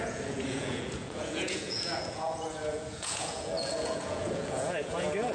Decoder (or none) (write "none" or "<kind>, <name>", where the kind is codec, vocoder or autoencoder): vocoder, Vocos